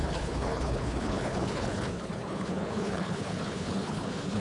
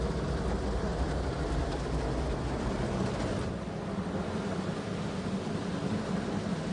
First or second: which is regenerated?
first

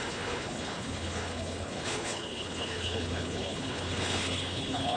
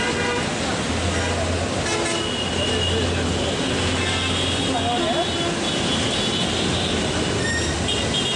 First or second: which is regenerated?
first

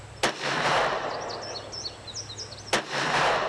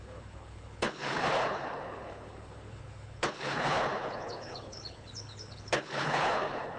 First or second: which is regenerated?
second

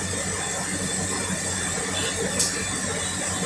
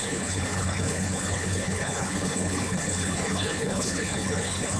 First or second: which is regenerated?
second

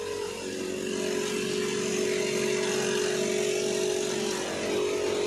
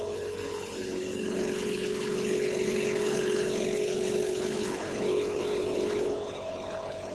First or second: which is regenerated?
second